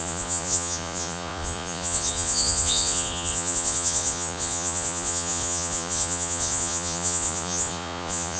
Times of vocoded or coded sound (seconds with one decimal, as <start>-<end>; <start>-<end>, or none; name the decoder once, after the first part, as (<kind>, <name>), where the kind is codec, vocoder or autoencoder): 0.0-8.4 (vocoder, Vocos)